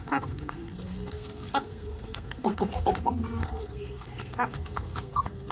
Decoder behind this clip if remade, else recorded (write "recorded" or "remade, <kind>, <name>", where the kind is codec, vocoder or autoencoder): remade, codec, SNAC